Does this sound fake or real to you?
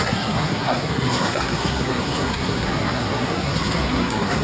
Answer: fake